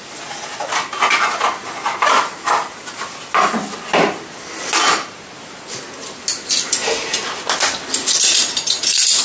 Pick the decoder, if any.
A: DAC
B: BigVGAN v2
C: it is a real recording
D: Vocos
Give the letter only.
C